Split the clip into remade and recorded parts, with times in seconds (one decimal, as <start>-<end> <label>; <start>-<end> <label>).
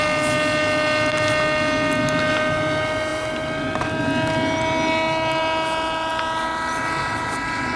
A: 0.0-7.8 recorded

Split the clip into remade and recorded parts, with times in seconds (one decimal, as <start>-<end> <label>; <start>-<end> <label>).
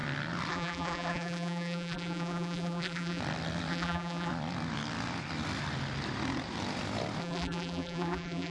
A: 0.0-0.5 recorded; 0.5-3.2 remade; 3.2-3.7 recorded; 3.7-4.3 remade; 4.3-7.2 recorded; 7.2-8.5 remade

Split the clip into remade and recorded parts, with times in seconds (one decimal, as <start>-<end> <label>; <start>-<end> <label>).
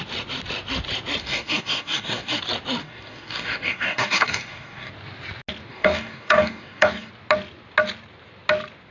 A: 0.0-1.2 recorded; 1.2-2.4 remade; 2.4-2.8 recorded; 2.8-4.9 remade; 4.9-5.7 recorded; 5.7-7.1 remade; 7.1-8.9 recorded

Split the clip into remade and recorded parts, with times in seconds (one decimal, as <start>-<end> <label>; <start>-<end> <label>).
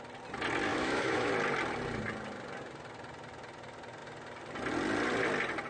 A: 0.0-0.7 recorded; 0.7-1.3 remade; 1.3-5.7 recorded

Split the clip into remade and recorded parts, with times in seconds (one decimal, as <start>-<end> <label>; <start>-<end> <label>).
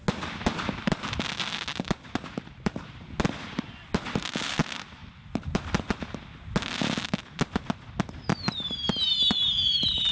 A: 0.0-10.1 recorded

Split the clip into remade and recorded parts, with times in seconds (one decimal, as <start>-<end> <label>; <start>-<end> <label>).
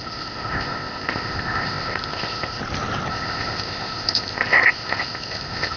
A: 0.0-2.6 remade; 2.6-3.1 recorded; 3.1-5.8 remade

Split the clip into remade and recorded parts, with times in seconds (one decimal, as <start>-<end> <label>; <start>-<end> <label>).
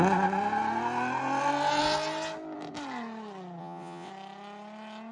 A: 0.0-3.6 recorded; 3.6-4.1 remade; 4.1-5.1 recorded